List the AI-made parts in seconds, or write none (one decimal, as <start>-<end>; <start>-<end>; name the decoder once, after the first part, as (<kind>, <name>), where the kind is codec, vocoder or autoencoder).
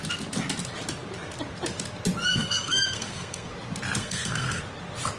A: 2.2-3.5 (codec, SNAC); 4.0-4.6